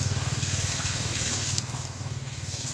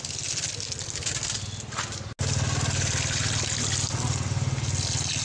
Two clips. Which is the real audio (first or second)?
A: second